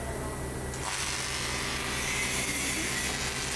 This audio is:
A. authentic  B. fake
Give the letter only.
A